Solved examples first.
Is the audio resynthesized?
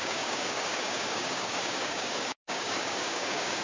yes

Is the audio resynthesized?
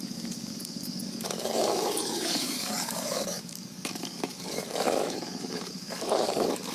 yes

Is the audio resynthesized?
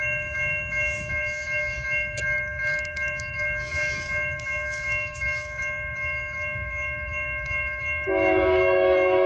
yes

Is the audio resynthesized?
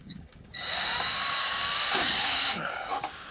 yes